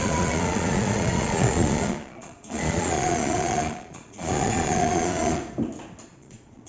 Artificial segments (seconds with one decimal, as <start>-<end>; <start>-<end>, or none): 0.0-5.4; 6.0-6.7